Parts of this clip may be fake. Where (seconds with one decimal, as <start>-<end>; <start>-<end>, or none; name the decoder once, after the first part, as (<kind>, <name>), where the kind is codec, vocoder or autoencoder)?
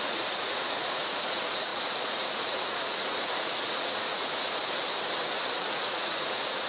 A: 0.0-4.6 (vocoder, Vocos); 5.5-6.7